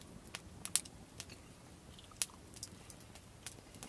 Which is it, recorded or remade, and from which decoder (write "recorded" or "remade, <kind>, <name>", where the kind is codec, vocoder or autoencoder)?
recorded